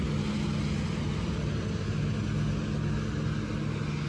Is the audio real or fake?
real